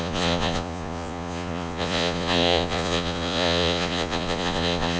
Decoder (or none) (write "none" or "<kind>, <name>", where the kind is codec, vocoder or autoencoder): vocoder, Vocos